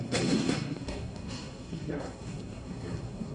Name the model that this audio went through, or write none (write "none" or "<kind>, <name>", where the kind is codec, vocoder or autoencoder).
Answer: codec, SNAC